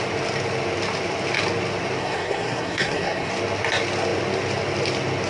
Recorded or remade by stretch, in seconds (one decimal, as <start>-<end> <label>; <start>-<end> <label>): 0.0-2.0 recorded; 2.0-3.3 remade; 3.3-5.3 recorded